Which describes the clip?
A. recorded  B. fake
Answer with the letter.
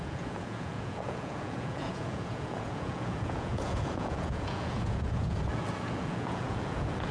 B